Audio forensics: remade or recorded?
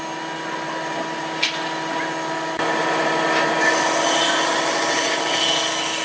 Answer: recorded